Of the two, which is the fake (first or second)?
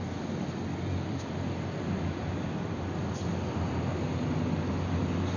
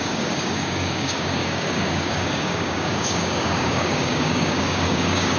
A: second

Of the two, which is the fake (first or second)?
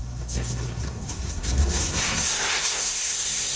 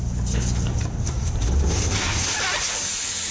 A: first